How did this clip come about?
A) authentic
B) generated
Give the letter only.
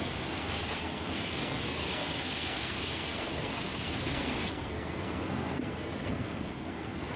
B